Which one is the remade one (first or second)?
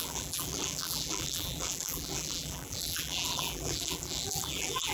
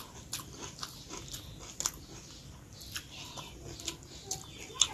first